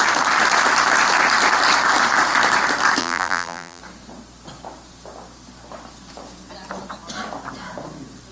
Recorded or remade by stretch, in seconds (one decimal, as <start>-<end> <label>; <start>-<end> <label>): 0.0-3.0 recorded; 3.0-3.8 remade; 3.8-8.3 recorded